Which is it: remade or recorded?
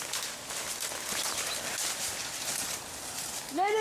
recorded